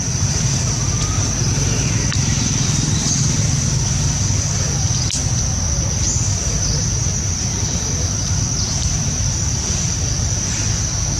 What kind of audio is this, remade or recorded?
recorded